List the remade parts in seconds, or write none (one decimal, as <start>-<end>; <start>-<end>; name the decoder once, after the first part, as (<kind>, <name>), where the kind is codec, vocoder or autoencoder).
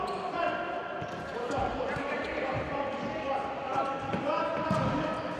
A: 1.7-2.7 (vocoder, BigVGAN v2)